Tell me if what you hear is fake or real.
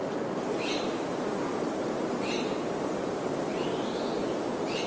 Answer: real